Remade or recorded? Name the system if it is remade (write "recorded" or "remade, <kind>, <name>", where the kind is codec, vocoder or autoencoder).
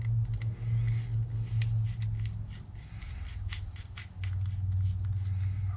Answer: recorded